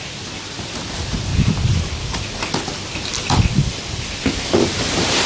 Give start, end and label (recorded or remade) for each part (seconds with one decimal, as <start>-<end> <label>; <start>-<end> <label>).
0.0-5.3 recorded